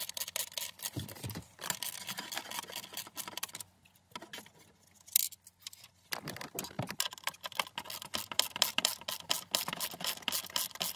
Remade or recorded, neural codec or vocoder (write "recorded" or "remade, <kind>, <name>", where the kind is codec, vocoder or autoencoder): recorded